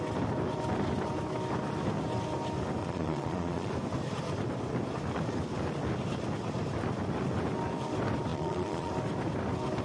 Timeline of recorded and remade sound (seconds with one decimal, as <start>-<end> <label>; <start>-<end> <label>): 0.0-2.8 recorded; 2.8-3.7 remade; 3.7-8.3 recorded; 8.3-8.9 remade; 8.9-9.8 recorded